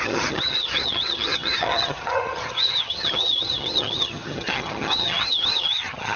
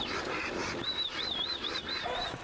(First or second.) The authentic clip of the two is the second